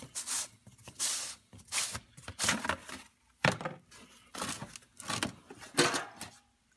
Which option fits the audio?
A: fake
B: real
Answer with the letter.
B